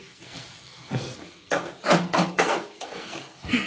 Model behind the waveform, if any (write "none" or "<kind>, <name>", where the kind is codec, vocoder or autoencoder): codec, SNAC